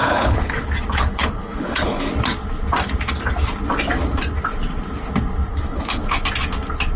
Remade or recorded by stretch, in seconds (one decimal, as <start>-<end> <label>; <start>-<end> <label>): 0.0-0.5 remade; 0.5-1.0 recorded; 1.0-2.1 remade; 2.1-5.5 recorded; 5.5-6.0 remade; 6.0-7.0 recorded